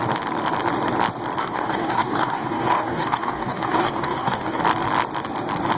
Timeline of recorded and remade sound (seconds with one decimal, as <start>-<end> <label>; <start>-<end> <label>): 0.0-1.4 recorded; 1.4-4.6 remade; 4.6-5.8 recorded